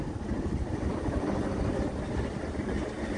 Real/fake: real